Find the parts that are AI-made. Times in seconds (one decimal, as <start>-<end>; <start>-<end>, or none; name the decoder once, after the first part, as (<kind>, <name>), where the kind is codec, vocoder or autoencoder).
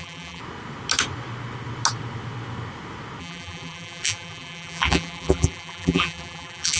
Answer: 0.0-0.4 (vocoder, BigVGAN v2); 3.2-6.8